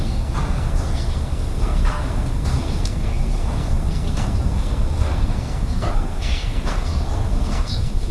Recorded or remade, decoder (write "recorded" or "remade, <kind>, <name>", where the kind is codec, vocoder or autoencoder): remade, codec, SNAC